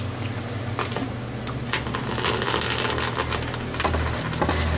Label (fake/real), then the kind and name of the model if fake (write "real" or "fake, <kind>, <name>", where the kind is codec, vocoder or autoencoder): real